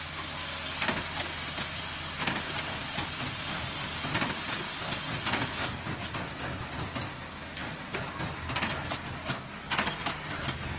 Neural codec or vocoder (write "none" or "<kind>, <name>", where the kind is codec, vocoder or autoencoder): none